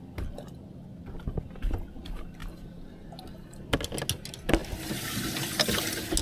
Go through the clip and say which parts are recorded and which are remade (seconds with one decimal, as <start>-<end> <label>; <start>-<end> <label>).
0.0-2.4 recorded; 2.4-3.1 remade; 3.1-6.2 recorded